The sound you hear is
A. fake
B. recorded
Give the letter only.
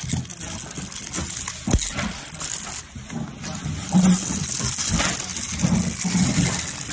B